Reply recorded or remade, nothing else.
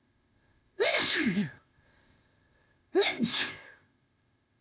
remade